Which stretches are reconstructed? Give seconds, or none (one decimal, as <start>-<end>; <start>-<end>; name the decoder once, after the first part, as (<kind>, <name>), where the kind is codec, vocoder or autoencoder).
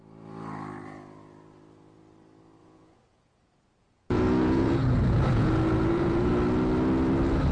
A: 2.6-6.3 (vocoder, Vocos)